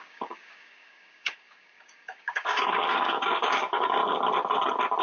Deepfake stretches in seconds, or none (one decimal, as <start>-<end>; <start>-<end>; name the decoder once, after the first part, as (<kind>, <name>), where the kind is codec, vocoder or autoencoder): 0.0-4.0 (codec, DAC)